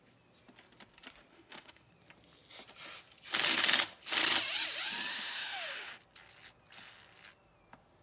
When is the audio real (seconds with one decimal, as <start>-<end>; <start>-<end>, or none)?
0.0-1.3; 1.9-5.1; 5.9-8.0

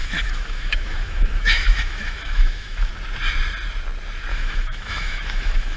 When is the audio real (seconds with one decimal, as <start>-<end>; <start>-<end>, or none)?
2.9-4.3

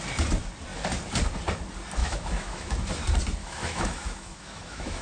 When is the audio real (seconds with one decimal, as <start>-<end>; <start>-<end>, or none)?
0.0-2.0; 2.7-3.4

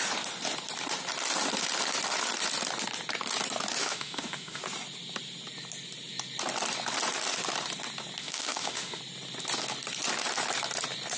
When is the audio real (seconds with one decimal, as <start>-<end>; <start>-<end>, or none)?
0.0-3.8; 4.6-8.2; 9.0-11.2

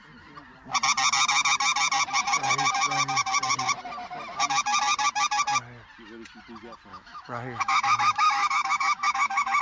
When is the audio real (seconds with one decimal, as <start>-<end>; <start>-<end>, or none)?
0.0-6.9

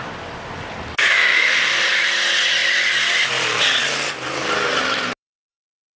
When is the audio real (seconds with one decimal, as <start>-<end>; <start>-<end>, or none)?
0.0-0.9; 1.7-6.0

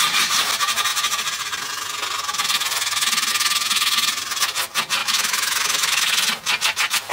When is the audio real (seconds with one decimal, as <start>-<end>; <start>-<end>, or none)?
0.0-5.0; 6.1-7.1

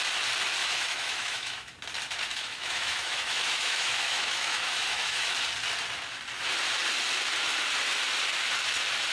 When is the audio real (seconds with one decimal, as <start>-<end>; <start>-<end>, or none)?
0.0-0.6; 1.7-2.3; 5.3-9.1